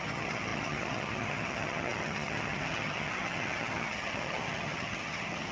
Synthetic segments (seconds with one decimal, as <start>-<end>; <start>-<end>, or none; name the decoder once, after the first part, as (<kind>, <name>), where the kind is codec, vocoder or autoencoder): 0.0-5.5 (vocoder, HiFi-GAN)

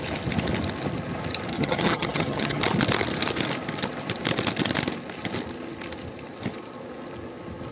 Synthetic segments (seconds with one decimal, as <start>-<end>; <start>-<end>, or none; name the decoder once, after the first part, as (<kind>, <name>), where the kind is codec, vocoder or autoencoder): 1.5-2.6 (vocoder, HiFi-GAN)

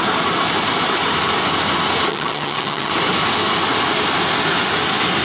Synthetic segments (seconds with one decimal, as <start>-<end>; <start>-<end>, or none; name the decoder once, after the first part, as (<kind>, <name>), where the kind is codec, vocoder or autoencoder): 2.1-2.9 (vocoder, HiFi-GAN)

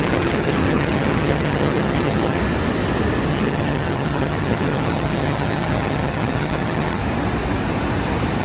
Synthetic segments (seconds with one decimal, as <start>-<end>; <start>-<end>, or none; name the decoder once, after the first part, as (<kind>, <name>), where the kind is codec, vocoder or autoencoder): 0.0-2.4 (vocoder, HiFi-GAN); 3.3-7.0

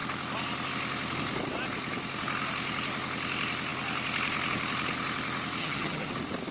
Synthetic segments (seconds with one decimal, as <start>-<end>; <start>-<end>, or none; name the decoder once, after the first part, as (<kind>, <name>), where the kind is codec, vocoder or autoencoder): 5.6-6.1 (vocoder, HiFi-GAN)